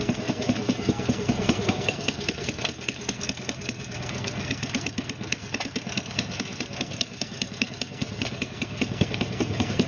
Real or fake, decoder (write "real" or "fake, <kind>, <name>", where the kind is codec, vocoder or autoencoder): fake, codec, SNAC